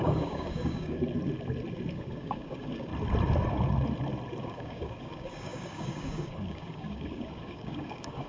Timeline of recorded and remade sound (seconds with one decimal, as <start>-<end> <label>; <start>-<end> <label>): 0.0-1.0 remade; 1.0-1.9 recorded; 1.9-2.9 remade; 2.9-4.4 recorded; 4.4-8.3 remade